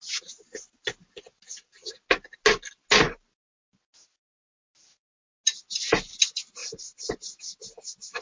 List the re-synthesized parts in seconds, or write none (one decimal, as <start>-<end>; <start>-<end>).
6.6-7.4